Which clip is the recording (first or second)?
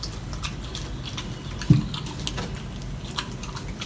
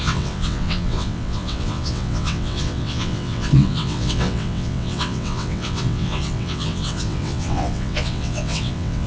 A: first